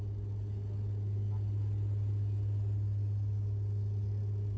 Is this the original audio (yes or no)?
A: yes